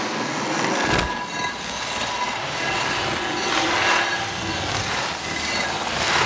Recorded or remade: recorded